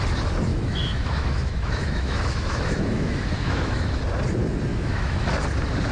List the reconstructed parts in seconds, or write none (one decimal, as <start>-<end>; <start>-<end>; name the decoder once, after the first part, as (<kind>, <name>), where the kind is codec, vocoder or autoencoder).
0.5-4.0 (autoencoder, DAC-VAE); 4.7-5.3